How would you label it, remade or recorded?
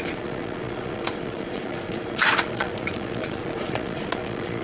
remade